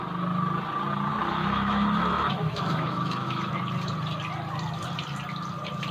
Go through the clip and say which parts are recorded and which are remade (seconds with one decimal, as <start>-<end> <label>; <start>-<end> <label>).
0.0-1.1 recorded; 1.1-3.5 remade; 3.5-5.9 recorded